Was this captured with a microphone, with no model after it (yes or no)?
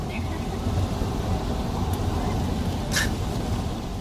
yes